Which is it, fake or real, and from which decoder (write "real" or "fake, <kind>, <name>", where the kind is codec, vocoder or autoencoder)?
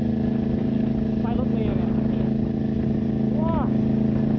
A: real